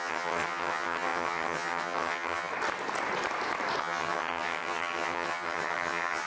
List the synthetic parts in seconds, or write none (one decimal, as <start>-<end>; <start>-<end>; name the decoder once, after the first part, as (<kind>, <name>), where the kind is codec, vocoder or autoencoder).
0.0-2.5 (vocoder, HiFi-GAN); 3.8-6.3